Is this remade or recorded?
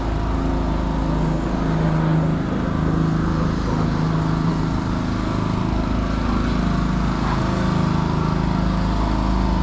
recorded